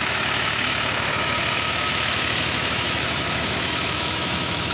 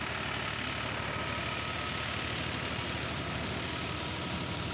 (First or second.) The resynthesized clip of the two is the first